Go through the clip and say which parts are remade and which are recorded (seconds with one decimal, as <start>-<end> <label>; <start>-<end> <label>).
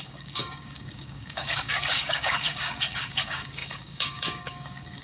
0.0-5.0 remade